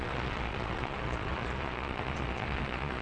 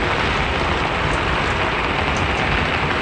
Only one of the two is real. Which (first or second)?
second